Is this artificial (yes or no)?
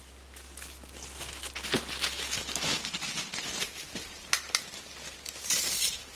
no